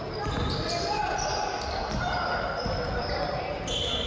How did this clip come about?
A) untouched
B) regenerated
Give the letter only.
A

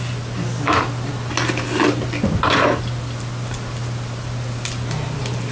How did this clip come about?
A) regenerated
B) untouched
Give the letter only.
B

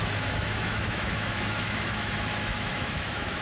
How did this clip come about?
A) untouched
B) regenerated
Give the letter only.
B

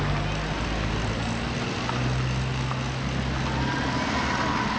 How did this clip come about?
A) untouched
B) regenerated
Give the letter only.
A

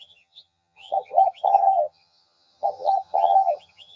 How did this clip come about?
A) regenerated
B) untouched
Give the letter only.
A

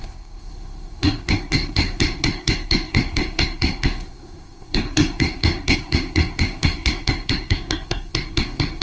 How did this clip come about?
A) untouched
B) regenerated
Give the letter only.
B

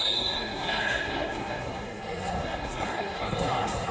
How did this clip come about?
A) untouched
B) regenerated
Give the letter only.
B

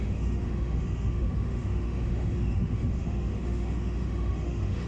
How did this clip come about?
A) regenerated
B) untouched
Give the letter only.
A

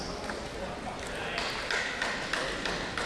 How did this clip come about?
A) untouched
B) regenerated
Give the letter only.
A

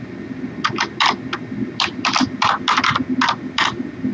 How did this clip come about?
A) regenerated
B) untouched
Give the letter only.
B